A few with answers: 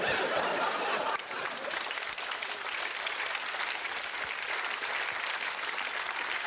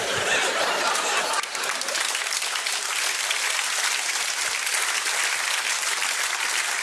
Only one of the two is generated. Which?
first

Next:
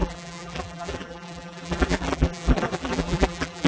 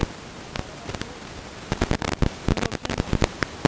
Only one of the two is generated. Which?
first